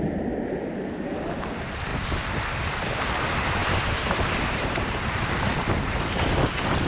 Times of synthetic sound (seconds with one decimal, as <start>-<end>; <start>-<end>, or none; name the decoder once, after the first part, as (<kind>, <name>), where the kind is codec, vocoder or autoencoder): 3.6-5.4 (vocoder, BigVGAN v2)